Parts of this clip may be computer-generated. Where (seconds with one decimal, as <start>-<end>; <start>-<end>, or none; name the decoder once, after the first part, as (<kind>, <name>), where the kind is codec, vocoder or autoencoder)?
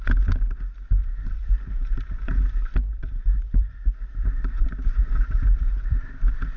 1.0-3.7 (vocoder, BigVGAN v2)